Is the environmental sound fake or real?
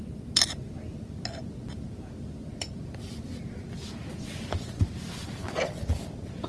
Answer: real